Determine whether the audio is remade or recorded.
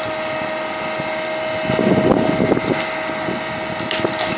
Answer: recorded